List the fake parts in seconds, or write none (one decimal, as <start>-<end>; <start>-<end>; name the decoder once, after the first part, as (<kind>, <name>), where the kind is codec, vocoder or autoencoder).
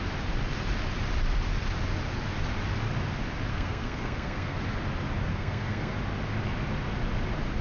3.5-4.6 (codec, SNAC); 5.3-5.9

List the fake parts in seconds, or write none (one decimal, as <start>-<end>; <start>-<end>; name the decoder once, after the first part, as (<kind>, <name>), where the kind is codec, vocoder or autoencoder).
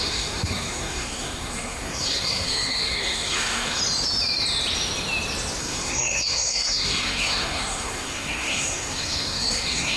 0.0-3.8 (codec, SNAC); 5.6-10.0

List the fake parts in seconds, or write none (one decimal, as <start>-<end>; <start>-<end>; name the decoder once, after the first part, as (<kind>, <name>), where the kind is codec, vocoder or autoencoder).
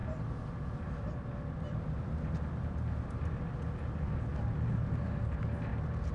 none